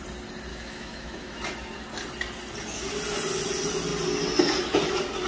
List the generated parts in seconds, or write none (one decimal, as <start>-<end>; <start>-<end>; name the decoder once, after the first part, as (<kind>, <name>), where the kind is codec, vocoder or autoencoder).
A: 0.5-1.4 (autoencoder, DAC-VAE)